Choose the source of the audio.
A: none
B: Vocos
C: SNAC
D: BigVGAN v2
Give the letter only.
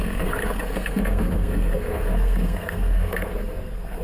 C